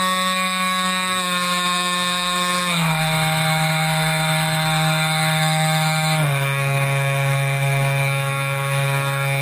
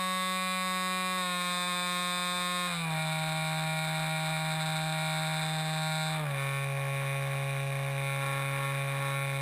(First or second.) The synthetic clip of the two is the first